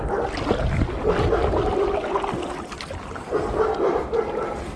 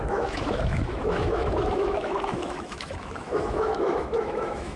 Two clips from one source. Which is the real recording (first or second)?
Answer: first